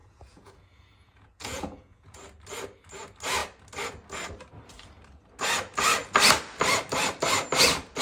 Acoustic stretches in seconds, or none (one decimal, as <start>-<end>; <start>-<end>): 2.2-8.0